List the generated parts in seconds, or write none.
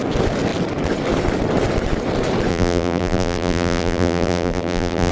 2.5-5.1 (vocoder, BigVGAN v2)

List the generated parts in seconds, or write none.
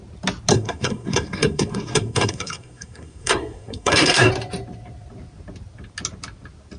0.5-4.3 (codec, SNAC)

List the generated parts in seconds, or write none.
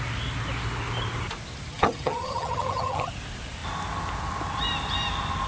1.7-3.1 (vocoder, HiFi-GAN)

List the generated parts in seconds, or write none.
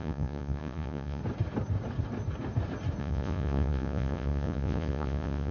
0.0-1.2 (vocoder, Vocos); 3.0-5.5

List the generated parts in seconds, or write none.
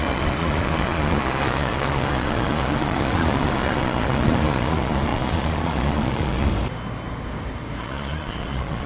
0.0-6.5 (vocoder, Vocos); 7.8-8.9